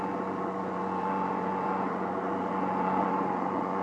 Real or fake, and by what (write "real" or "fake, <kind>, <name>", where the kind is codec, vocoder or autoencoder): fake, vocoder, Vocos